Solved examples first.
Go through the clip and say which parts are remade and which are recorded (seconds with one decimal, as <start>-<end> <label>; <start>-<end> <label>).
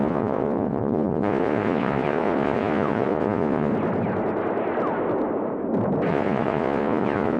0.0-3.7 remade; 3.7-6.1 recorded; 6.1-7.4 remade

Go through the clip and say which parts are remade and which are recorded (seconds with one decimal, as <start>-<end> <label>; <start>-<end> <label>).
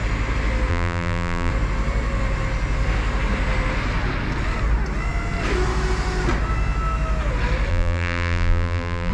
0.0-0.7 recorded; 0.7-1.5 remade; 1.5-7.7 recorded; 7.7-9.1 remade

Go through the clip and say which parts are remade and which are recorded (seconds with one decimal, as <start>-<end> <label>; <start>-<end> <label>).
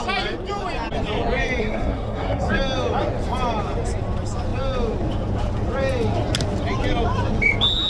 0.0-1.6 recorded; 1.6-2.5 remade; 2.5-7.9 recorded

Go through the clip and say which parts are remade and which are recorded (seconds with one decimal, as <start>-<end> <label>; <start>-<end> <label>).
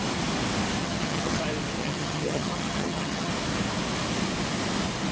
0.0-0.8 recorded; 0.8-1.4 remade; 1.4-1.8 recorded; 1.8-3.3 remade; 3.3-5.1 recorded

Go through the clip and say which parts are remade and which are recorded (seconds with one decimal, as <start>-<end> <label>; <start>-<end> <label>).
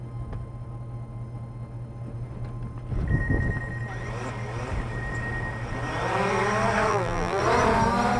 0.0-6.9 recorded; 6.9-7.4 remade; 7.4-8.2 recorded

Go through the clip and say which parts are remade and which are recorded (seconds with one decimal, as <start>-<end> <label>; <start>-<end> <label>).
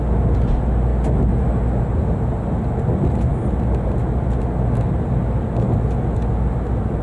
0.0-7.0 recorded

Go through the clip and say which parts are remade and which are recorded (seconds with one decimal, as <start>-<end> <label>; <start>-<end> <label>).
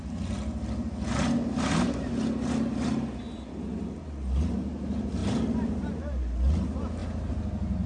0.0-7.9 recorded